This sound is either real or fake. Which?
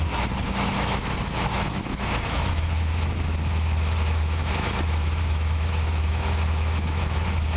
fake